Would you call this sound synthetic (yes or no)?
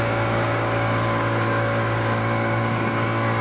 yes